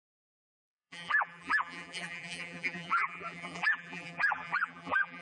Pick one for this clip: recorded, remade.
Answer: remade